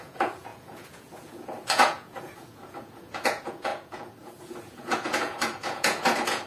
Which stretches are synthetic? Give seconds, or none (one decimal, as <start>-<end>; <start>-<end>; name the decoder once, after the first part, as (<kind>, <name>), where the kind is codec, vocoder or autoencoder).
0.0-6.5 (vocoder, Vocos)